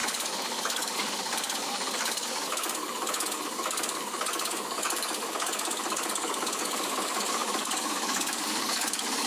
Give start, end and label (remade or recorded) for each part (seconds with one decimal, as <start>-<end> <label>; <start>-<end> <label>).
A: 0.0-9.3 remade